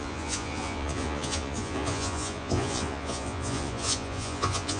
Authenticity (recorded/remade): remade